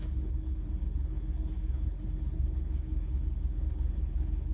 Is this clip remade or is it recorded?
remade